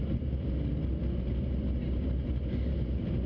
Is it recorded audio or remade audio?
recorded